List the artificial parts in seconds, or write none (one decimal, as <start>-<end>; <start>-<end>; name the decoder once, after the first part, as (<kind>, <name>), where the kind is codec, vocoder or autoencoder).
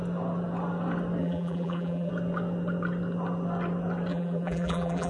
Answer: 1.2-2.1 (vocoder, BigVGAN v2); 4.1-5.1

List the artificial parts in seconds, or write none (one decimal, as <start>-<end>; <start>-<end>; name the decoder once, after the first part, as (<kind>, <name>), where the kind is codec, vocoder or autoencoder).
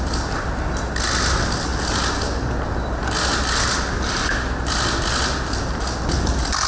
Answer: none